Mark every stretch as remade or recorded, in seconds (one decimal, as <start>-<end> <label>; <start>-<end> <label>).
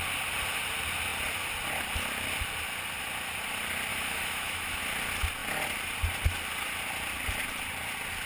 0.0-3.9 recorded; 3.9-4.8 remade; 4.8-8.3 recorded